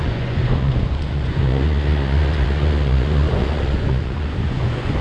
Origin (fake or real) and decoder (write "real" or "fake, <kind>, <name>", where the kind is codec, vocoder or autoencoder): fake, vocoder, Vocos